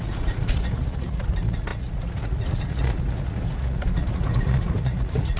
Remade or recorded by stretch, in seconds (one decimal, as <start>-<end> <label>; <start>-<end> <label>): 0.0-5.4 remade